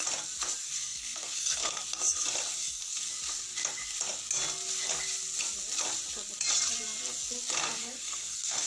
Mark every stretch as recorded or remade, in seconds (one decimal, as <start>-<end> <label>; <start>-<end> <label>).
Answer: 0.0-0.6 recorded; 0.6-1.8 remade; 1.8-2.6 recorded; 2.6-3.1 remade; 3.1-7.8 recorded; 7.8-8.7 remade